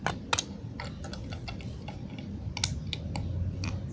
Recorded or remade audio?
recorded